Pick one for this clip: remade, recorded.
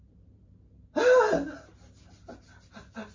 recorded